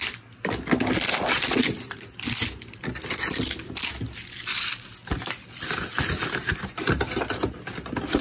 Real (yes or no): yes